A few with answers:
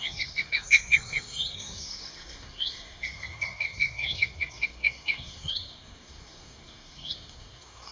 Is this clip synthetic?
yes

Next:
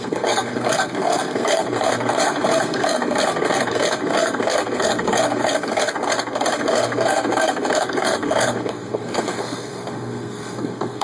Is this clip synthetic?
yes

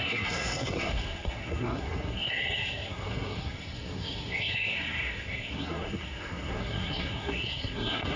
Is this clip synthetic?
yes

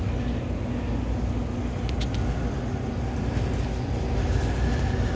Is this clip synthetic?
no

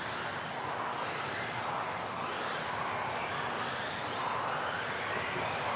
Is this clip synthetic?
no